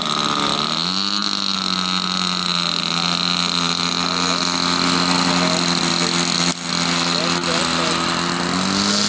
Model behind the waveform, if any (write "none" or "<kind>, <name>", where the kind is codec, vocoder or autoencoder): none